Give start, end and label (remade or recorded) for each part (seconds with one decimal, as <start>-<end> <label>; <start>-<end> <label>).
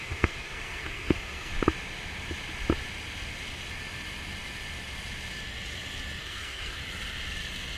0.0-1.5 remade; 1.5-6.2 recorded; 6.2-6.8 remade; 6.8-7.8 recorded